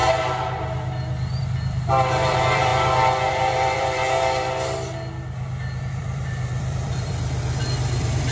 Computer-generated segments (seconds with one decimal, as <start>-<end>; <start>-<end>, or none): 1.4-2.7; 3.3-4.0; 5.8-8.3